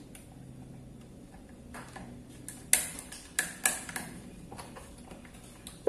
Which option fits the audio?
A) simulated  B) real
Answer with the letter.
B